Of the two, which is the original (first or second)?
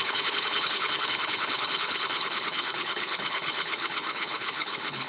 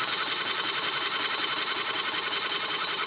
second